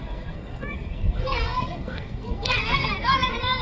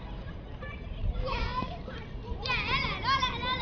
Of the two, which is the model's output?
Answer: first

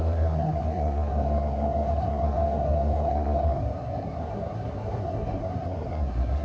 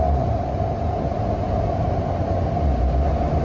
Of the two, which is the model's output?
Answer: first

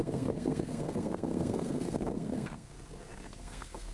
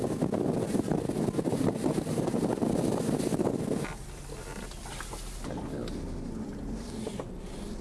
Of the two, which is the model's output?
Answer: first